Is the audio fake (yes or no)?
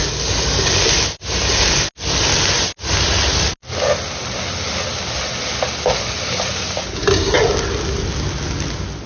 no